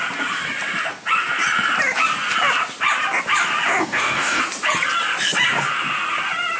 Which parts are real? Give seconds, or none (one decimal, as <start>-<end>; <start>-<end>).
0.0-3.8; 4.4-6.6